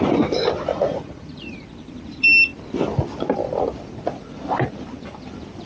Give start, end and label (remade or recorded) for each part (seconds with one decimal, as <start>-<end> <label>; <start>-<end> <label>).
0.0-0.7 recorded; 0.7-1.6 remade; 1.6-5.7 recorded